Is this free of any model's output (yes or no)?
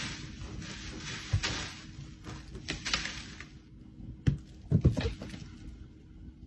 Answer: yes